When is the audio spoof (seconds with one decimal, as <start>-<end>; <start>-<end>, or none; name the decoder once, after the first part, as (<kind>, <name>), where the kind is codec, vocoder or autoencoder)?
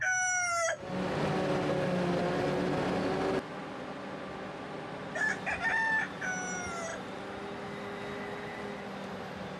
none